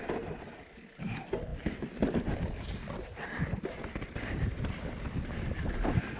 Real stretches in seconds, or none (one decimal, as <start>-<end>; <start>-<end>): 0.0-6.2